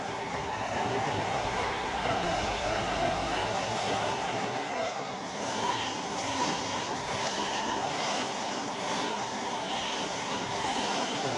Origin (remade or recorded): remade